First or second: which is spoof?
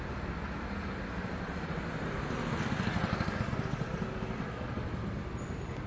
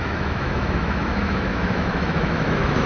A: second